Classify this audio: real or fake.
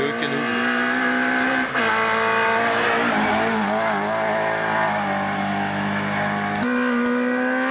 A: real